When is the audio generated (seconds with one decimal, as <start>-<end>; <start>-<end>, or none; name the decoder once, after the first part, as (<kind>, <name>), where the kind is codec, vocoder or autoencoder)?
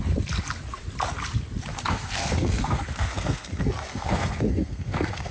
1.7-5.3 (codec, SNAC)